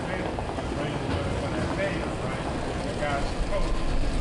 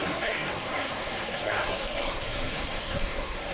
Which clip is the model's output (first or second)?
second